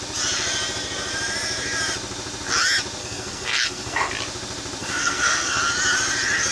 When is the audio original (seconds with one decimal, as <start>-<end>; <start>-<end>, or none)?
0.0-3.0; 4.1-4.8; 5.6-6.5